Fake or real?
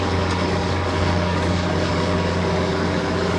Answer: fake